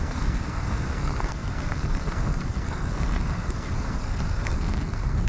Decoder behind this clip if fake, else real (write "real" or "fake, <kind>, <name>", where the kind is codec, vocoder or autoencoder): fake, codec, SNAC